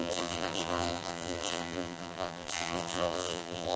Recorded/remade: remade